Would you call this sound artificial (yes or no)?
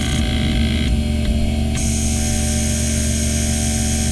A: no